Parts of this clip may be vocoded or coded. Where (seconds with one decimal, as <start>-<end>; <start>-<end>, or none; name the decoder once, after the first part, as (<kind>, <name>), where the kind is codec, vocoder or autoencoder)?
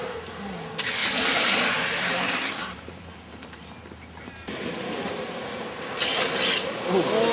none